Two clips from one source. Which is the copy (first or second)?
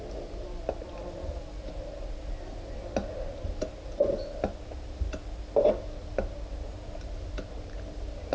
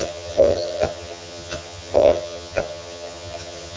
second